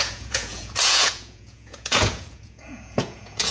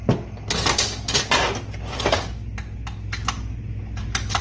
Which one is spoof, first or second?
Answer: first